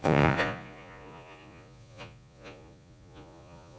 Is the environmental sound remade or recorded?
remade